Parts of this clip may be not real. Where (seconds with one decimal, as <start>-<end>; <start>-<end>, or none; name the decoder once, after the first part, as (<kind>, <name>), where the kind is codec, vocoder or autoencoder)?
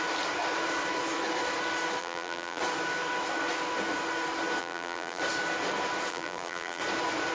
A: 2.0-2.6 (vocoder, BigVGAN v2); 4.6-5.2; 6.1-6.8